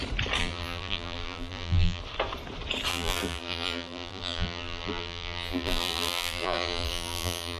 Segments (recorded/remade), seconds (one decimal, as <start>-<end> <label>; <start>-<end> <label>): 0.0-0.4 recorded; 0.4-2.0 remade; 2.0-2.9 recorded; 2.9-7.6 remade